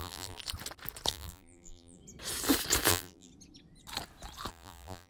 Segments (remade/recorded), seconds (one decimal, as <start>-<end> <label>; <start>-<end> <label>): 0.0-0.4 remade; 0.4-1.1 recorded; 1.1-2.0 remade; 2.0-2.9 recorded; 2.9-3.3 remade; 3.3-4.5 recorded; 4.5-5.1 remade

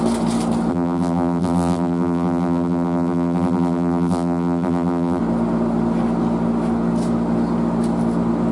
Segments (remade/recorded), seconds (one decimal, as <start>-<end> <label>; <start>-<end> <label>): 0.0-0.7 recorded; 0.7-5.2 remade; 5.2-8.5 recorded